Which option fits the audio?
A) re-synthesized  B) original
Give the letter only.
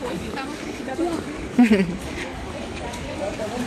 A